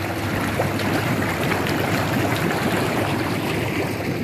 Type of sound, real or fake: fake